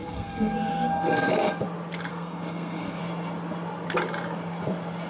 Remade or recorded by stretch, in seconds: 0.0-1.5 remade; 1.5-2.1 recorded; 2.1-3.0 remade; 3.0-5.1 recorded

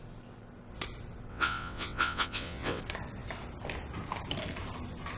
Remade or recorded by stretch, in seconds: 0.0-1.3 recorded; 1.3-2.8 remade; 2.8-5.2 recorded

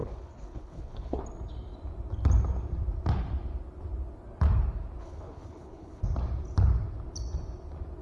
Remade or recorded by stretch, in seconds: 0.0-1.2 remade; 1.2-5.0 recorded; 5.0-6.0 remade; 6.0-8.0 recorded

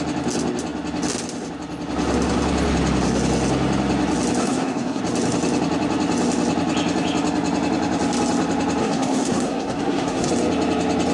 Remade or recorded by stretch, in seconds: 0.0-4.4 recorded; 4.4-5.0 remade; 5.0-8.8 recorded; 8.8-10.3 remade; 10.3-11.1 recorded